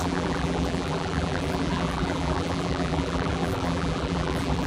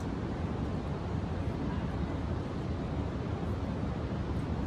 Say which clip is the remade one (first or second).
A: first